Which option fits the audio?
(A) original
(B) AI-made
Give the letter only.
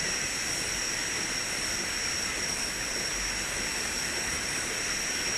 A